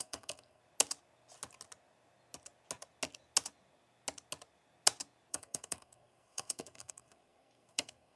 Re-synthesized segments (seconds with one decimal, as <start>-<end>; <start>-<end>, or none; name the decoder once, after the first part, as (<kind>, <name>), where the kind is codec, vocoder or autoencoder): 0.0-0.6 (codec, SNAC); 5.3-8.2